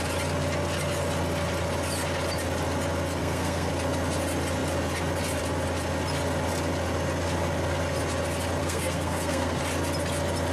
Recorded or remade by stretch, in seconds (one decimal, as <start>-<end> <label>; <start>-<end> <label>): 0.0-3.2 recorded; 3.2-3.7 remade; 3.7-8.6 recorded; 8.6-9.6 remade; 9.6-10.5 recorded